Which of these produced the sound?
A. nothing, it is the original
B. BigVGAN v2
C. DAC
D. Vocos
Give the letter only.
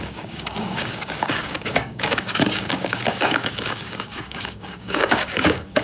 C